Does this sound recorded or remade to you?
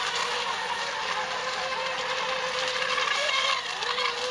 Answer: recorded